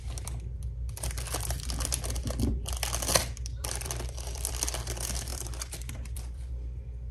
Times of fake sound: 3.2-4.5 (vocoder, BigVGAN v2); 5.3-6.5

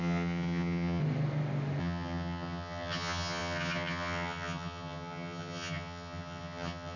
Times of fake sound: 0.0-1.0 (vocoder, HiFi-GAN); 1.8-7.0